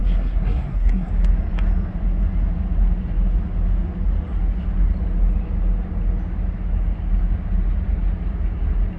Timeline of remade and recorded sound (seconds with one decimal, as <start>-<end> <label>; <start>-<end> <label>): 0.0-1.1 remade; 1.1-9.0 recorded